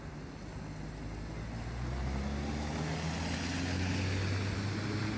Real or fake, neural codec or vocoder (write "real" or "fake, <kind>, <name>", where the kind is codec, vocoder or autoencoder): real